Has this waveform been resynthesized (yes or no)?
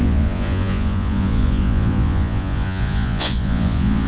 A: yes